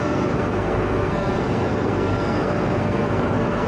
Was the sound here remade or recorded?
remade